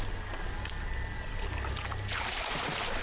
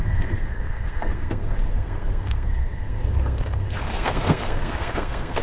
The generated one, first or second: second